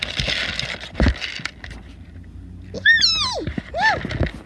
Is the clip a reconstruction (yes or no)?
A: no